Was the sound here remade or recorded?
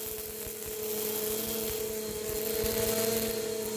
recorded